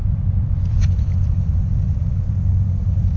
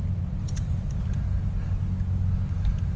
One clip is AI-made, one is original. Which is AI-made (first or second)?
first